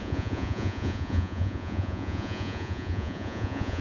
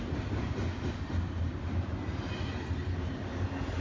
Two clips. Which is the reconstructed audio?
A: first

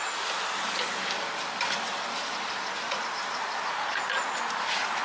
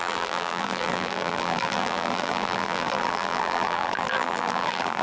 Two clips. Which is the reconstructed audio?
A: second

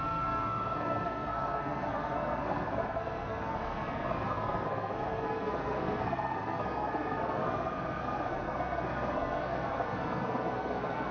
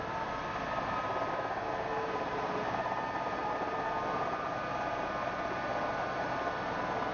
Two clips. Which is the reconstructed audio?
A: first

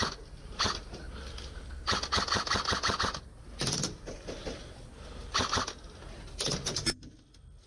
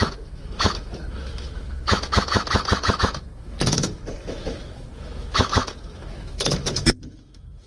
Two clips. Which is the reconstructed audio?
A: second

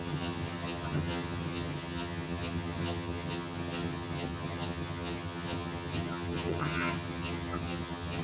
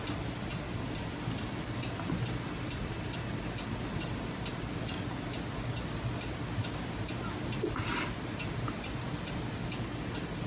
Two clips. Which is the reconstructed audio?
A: first